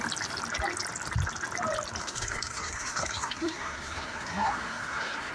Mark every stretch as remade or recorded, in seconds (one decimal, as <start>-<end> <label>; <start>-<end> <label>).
0.0-2.0 recorded; 2.0-5.3 remade